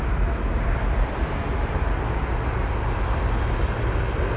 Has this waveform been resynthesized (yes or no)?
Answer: no